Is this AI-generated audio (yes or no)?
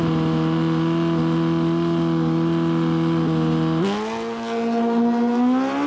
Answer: no